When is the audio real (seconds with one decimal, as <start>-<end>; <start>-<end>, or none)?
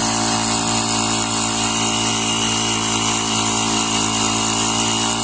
0.0-5.2